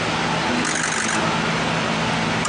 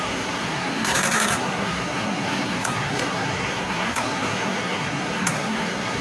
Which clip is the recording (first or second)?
first